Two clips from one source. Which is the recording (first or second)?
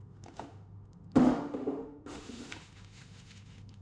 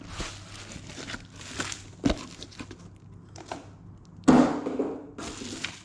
second